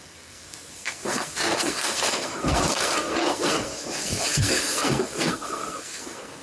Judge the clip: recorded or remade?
remade